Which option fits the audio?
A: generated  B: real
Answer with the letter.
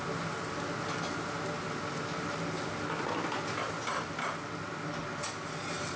B